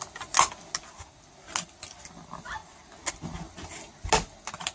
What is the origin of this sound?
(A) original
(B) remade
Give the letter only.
A